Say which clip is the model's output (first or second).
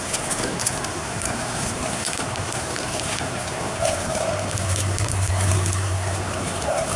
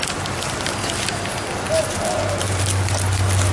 first